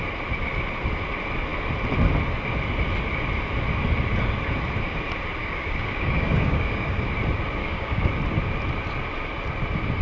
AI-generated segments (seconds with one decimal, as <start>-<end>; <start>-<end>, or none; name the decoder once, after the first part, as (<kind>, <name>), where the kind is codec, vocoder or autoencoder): 5.4-7.0 (codec, DAC); 7.6-8.1